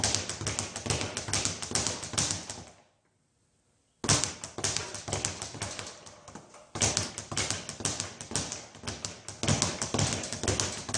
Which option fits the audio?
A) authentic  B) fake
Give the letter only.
A